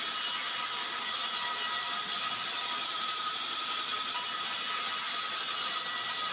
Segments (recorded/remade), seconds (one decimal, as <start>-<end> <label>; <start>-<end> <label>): 0.0-2.8 recorded; 2.8-3.4 remade; 3.4-6.3 recorded